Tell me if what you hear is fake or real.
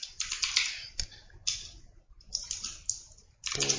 real